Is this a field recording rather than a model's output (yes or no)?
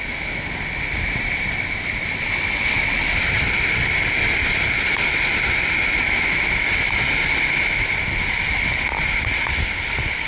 yes